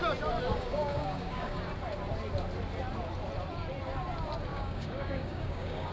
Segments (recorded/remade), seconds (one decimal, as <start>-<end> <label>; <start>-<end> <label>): 0.0-0.5 recorded; 0.5-1.6 remade; 1.6-4.5 recorded; 4.5-5.9 remade